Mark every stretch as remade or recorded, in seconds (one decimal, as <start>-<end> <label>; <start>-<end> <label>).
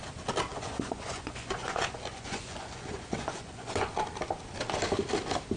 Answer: 0.0-0.5 recorded; 0.5-3.9 remade; 3.9-5.6 recorded